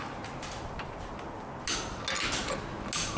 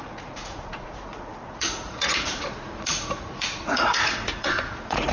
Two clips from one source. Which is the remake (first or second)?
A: second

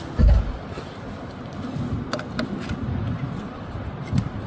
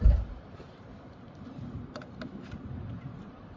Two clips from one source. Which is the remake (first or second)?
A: second